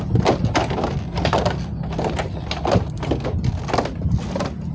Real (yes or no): yes